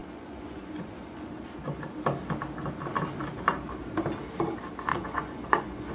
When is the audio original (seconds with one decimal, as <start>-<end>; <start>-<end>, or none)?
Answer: 1.3-4.9